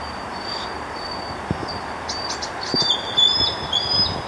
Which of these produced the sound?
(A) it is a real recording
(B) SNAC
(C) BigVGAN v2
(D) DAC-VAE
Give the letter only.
A